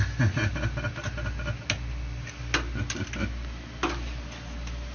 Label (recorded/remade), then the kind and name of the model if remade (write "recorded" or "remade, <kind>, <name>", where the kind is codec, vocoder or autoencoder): recorded